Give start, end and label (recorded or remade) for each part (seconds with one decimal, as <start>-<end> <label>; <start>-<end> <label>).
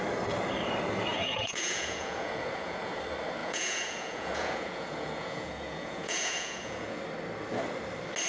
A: 0.0-1.1 recorded; 1.1-3.0 remade; 3.0-3.4 recorded; 3.4-7.0 remade; 7.0-8.3 recorded